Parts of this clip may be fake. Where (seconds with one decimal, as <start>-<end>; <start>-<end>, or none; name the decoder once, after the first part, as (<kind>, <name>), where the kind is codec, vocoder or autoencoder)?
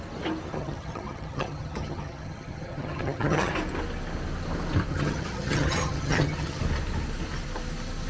0.5-3.5 (vocoder, HiFi-GAN); 4.9-6.6